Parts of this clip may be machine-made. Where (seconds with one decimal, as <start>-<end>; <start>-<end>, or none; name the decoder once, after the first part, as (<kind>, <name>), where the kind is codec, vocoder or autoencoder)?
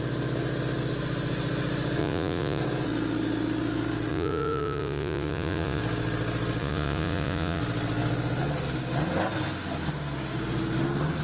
2.0-2.6 (vocoder, Vocos); 4.1-5.8; 6.6-7.6